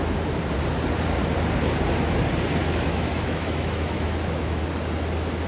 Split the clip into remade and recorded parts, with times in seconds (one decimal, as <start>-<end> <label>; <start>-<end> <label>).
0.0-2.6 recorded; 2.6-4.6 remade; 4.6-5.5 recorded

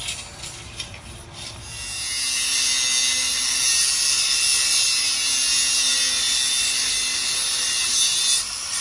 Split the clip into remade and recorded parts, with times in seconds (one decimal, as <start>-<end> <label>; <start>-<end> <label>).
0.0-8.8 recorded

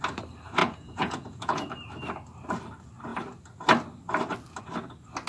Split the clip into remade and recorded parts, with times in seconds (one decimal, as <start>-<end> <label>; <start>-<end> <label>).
0.0-0.6 recorded; 0.6-1.7 remade; 1.7-5.3 recorded

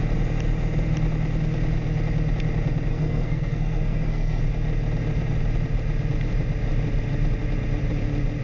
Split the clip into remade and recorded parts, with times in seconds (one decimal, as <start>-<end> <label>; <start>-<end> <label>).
0.0-2.9 recorded; 2.9-4.4 remade; 4.4-8.4 recorded